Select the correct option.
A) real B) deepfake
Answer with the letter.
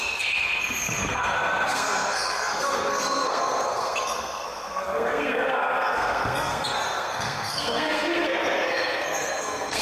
B